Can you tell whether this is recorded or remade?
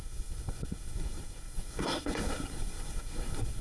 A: remade